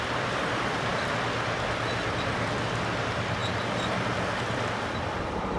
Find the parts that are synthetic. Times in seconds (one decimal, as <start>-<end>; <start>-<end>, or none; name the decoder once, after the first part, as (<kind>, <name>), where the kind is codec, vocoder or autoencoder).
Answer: 0.0-0.9 (vocoder, BigVGAN v2); 3.0-3.4; 4.4-5.6